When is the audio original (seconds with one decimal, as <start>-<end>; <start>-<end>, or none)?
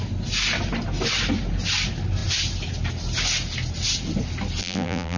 0.0-4.6